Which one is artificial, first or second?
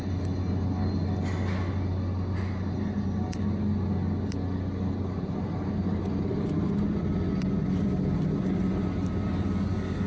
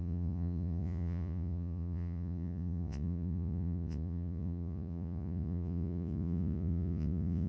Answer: second